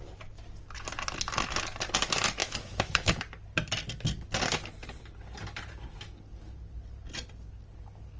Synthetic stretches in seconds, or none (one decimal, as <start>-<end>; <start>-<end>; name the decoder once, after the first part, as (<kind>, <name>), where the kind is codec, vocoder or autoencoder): 2.4-3.2 (autoencoder, DAC-VAE)